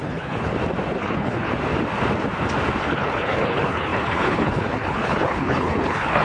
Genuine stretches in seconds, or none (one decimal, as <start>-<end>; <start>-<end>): 0.5-1.0; 1.5-2.8